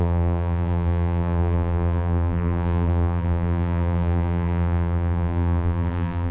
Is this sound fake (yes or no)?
yes